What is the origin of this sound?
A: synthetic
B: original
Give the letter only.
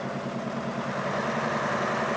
B